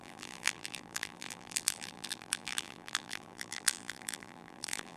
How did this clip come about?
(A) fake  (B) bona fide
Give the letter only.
A